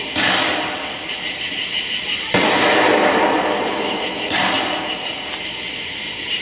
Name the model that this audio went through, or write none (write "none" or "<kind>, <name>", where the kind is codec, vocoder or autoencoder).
none